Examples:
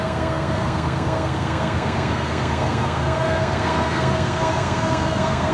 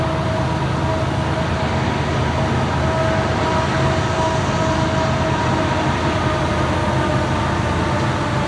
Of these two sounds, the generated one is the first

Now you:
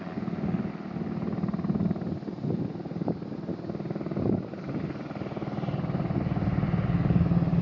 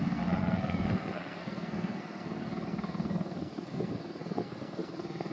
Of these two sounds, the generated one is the second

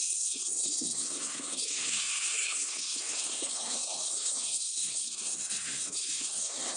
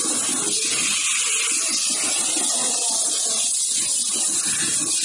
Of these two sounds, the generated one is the first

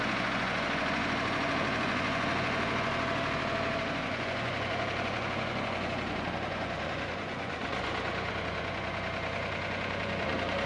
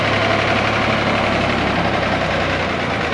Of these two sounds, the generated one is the first